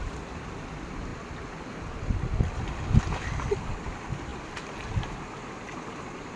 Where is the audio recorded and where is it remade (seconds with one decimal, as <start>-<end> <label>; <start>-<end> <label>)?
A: 0.0-6.4 recorded